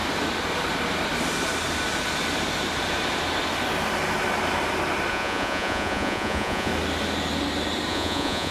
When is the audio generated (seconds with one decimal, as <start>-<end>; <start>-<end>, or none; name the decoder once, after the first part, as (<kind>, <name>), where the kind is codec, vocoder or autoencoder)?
5.1-6.7 (vocoder, Vocos); 7.9-8.5